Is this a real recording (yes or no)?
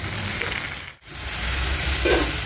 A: yes